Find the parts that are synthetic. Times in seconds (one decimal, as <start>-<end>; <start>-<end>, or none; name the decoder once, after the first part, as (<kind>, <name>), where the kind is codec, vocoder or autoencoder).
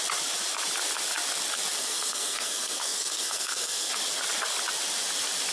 1.8-3.9 (codec, SNAC)